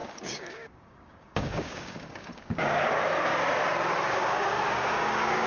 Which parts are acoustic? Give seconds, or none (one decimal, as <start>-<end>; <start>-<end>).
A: 3.3-4.1

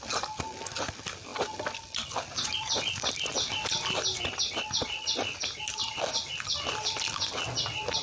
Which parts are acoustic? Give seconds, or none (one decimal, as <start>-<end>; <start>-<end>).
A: 0.0-8.0

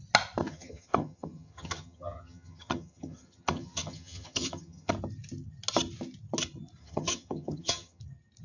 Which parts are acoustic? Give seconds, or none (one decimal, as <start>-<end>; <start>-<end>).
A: 0.0-0.4; 4.9-6.8; 8.0-8.4

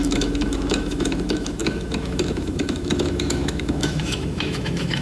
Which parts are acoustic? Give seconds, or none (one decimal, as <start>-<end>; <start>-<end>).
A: none

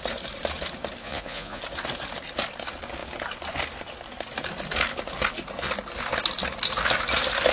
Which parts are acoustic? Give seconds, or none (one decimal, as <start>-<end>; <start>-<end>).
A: 0.0-1.0; 1.6-7.5

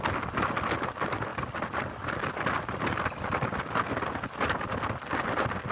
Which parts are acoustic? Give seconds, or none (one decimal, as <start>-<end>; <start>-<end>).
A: 0.0-5.7